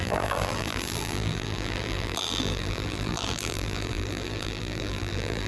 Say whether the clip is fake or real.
fake